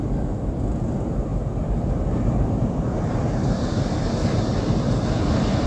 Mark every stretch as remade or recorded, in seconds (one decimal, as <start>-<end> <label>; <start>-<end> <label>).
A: 0.0-1.3 recorded; 1.3-4.1 remade; 4.1-5.7 recorded